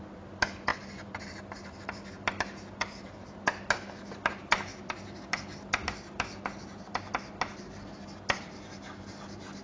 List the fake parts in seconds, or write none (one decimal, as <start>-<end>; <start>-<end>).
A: none